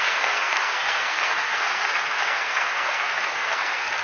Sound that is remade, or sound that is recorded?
remade